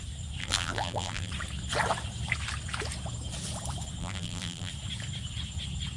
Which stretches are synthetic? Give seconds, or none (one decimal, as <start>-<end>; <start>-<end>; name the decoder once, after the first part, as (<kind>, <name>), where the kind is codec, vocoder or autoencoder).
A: 0.4-1.3 (vocoder, BigVGAN v2); 4.0-4.7